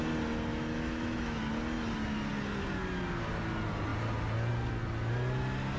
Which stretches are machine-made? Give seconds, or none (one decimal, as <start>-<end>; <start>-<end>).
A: 0.5-1.4